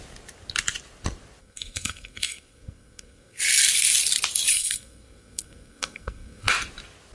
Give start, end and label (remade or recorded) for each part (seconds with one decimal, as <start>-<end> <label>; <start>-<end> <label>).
0.0-1.4 recorded; 1.4-3.4 remade; 3.4-4.5 recorded; 4.5-6.5 remade; 6.5-7.1 recorded